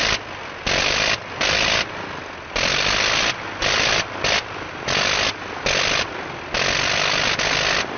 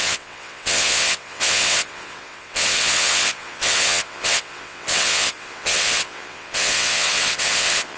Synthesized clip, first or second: second